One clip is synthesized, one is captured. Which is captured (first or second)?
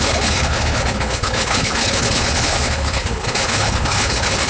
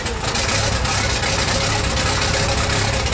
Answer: second